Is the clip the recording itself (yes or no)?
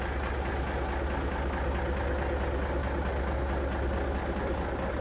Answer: yes